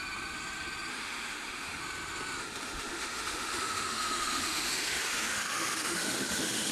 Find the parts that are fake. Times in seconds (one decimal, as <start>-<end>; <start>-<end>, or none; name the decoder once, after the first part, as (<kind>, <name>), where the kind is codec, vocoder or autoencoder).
0.9-1.8 (autoencoder, DAC-VAE); 2.4-6.7

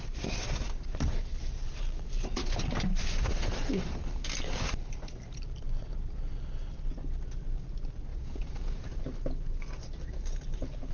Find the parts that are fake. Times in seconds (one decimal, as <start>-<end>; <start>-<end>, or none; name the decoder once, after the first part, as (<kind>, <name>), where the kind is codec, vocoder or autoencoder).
8.1-9.0 (vocoder, Vocos)

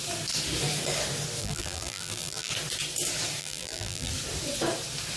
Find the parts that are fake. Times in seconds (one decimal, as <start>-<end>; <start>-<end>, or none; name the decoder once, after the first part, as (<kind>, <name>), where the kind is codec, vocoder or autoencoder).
1.4-2.5 (vocoder, BigVGAN v2); 3.4-4.1

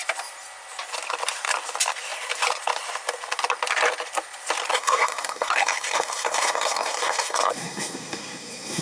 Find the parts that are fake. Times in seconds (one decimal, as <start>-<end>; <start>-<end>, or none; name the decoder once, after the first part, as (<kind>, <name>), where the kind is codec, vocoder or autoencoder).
4.7-8.8 (codec, SNAC)

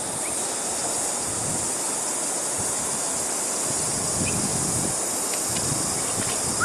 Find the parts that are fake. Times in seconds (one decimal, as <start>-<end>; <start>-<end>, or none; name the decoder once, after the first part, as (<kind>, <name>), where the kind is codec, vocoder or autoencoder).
none

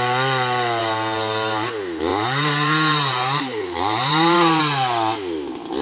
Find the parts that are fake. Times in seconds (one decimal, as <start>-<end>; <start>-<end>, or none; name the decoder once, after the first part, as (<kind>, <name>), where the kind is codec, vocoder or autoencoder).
0.8-1.7 (vocoder, BigVGAN v2); 2.1-4.6